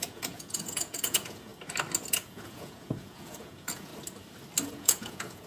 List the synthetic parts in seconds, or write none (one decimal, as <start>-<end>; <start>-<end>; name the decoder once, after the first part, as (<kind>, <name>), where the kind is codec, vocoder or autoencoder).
0.0-1.5 (vocoder, Vocos); 2.1-3.9; 4.7-5.5